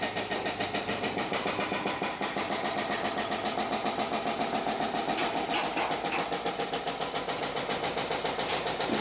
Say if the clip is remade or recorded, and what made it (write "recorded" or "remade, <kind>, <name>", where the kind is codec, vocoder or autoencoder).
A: recorded